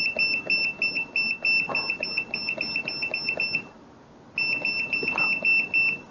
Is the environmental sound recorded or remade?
recorded